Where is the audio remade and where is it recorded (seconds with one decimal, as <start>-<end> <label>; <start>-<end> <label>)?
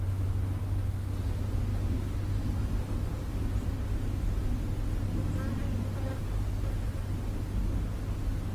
0.0-8.5 recorded